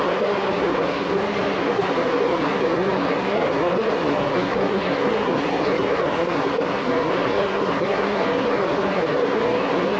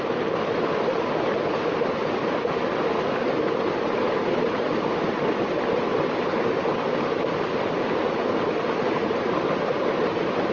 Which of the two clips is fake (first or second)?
first